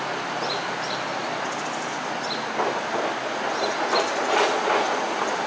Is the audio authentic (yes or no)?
yes